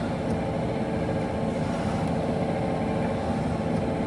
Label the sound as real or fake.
real